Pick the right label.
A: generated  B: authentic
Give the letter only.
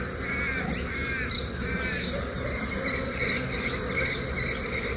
B